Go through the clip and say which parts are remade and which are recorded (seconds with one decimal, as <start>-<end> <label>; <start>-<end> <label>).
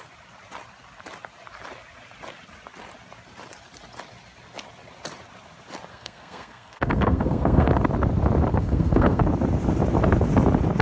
0.0-5.9 recorded; 5.9-7.7 remade; 7.7-8.5 recorded; 8.5-9.2 remade; 9.2-10.8 recorded